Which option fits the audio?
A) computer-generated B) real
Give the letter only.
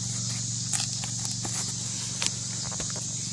B